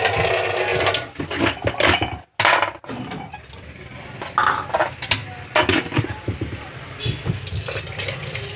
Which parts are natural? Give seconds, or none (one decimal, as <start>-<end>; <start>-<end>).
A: 0.0-8.6